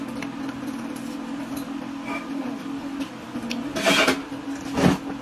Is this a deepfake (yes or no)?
no